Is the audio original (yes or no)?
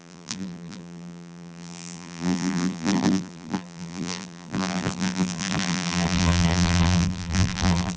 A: no